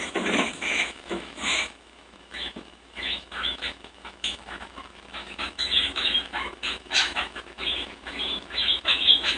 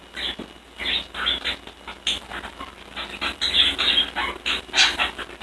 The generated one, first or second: first